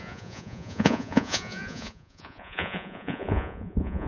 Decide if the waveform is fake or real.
fake